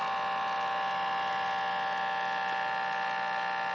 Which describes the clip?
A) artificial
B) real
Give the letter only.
B